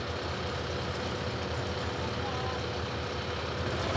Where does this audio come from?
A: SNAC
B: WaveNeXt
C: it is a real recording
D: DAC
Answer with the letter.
C